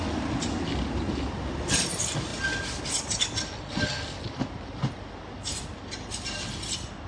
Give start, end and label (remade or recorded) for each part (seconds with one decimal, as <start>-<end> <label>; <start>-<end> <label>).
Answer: 0.0-7.1 recorded